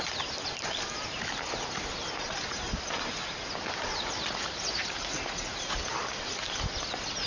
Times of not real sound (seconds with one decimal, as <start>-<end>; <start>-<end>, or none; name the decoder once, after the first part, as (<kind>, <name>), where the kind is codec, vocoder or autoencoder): 3.9-5.8 (vocoder, Vocos)